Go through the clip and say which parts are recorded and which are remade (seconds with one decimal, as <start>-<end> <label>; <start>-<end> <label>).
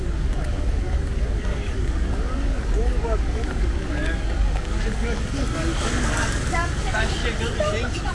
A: 0.0-7.2 remade; 7.2-8.1 recorded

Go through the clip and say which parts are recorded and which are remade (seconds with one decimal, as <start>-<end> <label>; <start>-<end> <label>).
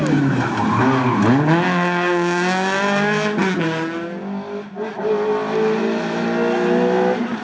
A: 0.0-7.4 recorded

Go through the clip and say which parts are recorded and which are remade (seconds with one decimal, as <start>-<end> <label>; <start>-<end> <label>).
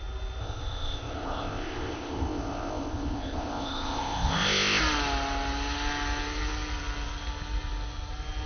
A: 0.0-0.4 recorded; 0.4-4.8 remade; 4.8-8.5 recorded